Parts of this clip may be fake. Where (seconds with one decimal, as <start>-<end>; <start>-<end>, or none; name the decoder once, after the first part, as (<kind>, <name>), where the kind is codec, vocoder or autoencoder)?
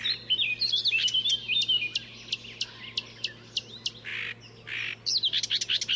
none